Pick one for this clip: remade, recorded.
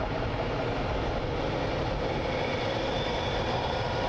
recorded